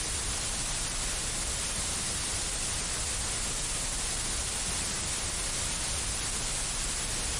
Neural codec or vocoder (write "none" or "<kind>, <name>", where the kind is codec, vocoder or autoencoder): none